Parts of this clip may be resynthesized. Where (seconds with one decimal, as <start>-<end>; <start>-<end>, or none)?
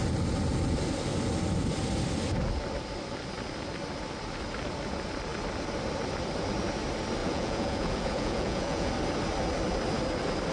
7.2-8.9